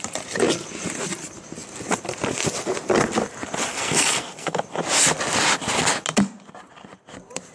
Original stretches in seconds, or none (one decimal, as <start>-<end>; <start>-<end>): 0.0-3.7; 4.6-7.5